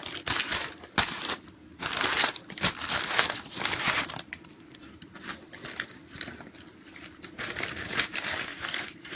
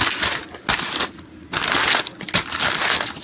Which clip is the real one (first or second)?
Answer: second